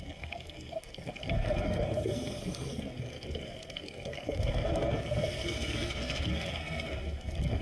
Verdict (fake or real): fake